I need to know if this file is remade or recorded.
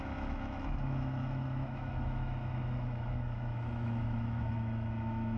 remade